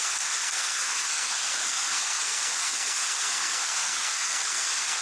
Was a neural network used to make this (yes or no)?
yes